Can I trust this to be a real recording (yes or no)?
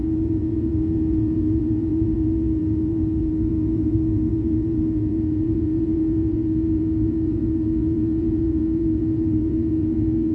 no